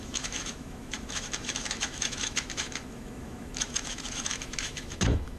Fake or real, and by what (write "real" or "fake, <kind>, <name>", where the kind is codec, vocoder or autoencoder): fake, autoencoder, DAC-VAE